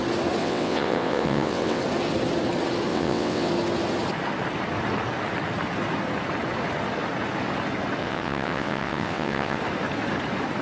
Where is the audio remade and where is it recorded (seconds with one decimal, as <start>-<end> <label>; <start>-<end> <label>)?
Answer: 0.0-0.4 recorded; 0.4-1.8 remade; 1.8-2.9 recorded; 2.9-3.5 remade; 3.5-8.0 recorded; 8.0-9.6 remade; 9.6-10.6 recorded